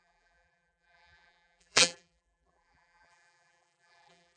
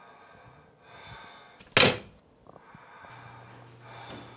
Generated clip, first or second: first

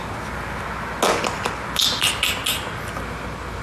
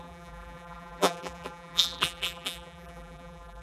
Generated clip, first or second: second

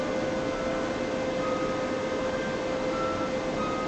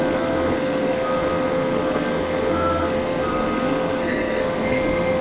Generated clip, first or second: second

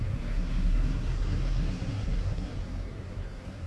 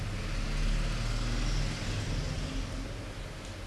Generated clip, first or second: first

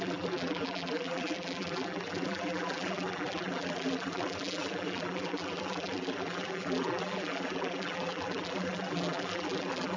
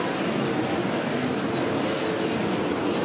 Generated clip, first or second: first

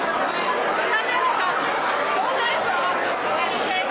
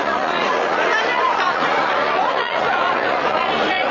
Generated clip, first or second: second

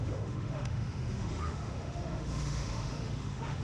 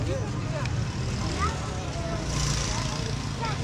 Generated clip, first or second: first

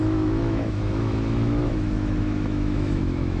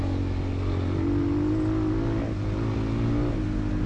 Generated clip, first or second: first